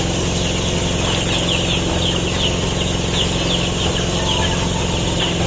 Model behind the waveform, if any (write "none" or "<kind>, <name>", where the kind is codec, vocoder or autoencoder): none